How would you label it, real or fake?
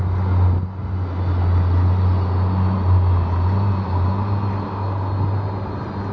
real